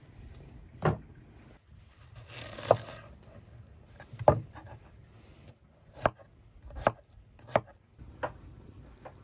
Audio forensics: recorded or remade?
recorded